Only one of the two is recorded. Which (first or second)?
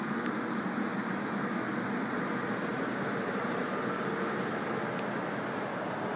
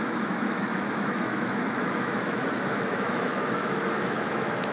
first